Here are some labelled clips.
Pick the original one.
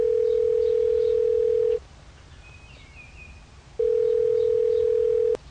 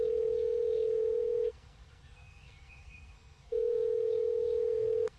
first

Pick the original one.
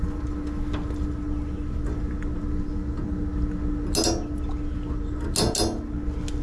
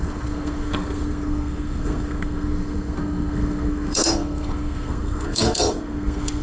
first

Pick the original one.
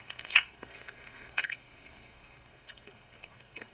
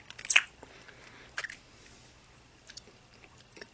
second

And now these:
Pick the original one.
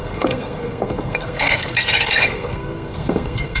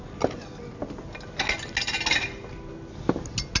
second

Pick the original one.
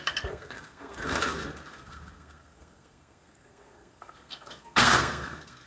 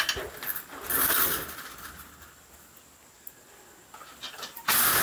second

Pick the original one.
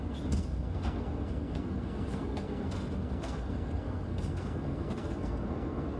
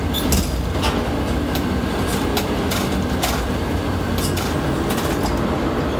second